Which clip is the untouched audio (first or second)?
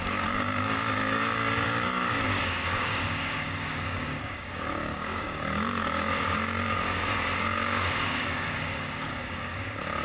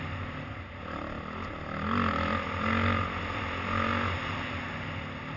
second